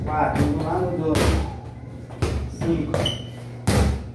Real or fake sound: real